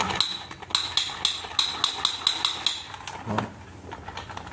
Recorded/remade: recorded